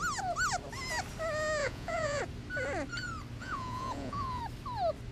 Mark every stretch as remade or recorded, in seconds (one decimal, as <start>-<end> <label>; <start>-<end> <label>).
0.0-1.6 recorded; 1.6-2.2 remade; 2.2-3.4 recorded; 3.4-4.4 remade; 4.4-5.1 recorded